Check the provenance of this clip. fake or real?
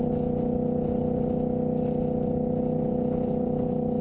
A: real